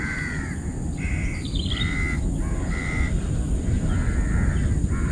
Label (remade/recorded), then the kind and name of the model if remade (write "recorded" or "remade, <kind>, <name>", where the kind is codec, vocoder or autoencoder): recorded